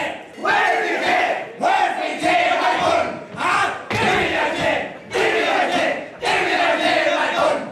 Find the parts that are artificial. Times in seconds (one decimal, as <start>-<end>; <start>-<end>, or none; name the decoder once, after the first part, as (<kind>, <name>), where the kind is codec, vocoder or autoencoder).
none

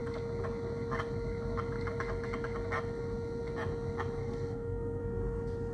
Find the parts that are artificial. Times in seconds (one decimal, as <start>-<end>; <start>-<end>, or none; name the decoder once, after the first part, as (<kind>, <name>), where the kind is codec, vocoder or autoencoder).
4.2-5.0 (codec, SNAC)

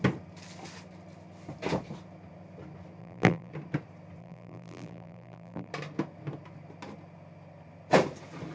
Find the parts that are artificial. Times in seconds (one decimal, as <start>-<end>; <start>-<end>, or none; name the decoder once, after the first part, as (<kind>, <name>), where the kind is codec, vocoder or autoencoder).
3.0-3.5 (vocoder, BigVGAN v2); 4.2-5.7

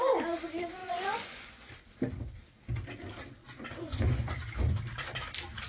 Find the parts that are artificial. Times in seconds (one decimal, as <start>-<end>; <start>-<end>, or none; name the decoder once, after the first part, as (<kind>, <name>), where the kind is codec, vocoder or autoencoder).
0.8-1.7 (vocoder, Vocos); 3.4-4.5